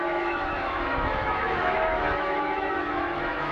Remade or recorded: remade